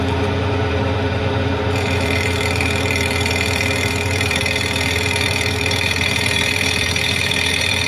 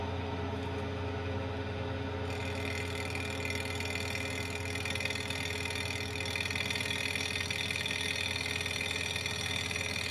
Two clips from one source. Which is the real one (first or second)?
second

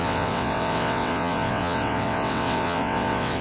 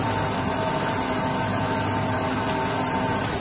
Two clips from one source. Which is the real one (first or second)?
second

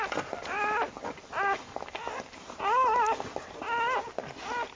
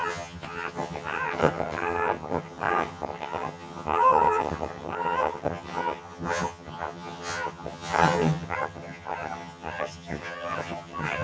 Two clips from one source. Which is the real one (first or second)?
first